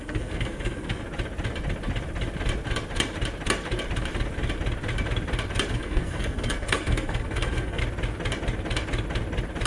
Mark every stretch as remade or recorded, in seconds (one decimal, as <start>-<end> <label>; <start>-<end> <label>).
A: 0.0-1.0 remade; 1.0-5.7 recorded; 5.7-7.8 remade; 7.8-9.7 recorded